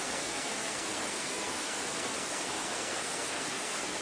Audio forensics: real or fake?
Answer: fake